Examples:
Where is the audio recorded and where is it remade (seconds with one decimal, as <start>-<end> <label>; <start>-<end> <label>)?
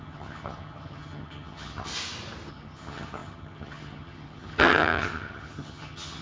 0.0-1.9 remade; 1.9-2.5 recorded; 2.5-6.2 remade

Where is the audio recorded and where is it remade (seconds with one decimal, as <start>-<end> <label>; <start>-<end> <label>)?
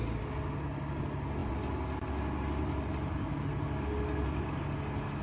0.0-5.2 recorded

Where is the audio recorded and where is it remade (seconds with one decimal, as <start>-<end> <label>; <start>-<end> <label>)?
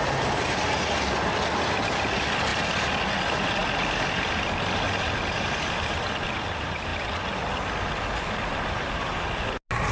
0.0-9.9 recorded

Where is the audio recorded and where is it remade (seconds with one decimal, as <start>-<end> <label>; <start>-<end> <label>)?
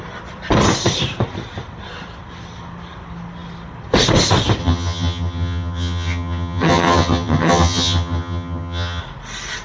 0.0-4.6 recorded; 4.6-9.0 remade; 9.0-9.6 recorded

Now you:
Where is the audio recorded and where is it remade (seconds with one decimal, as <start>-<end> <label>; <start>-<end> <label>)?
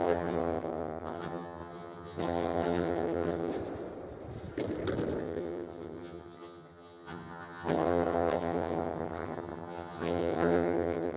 0.0-3.5 remade; 3.5-5.2 recorded; 5.2-11.2 remade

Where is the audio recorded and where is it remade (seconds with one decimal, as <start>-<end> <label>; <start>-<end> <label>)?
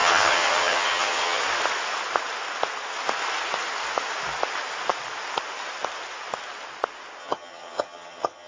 0.0-1.4 remade; 1.4-7.2 recorded; 7.2-8.5 remade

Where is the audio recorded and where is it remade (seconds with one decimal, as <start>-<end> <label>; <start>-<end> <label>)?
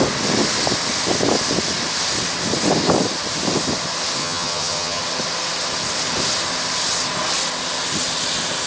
0.0-4.2 recorded; 4.2-5.0 remade; 5.0-8.7 recorded